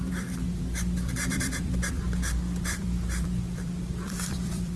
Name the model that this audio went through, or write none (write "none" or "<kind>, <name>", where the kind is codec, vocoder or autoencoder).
vocoder, BigVGAN v2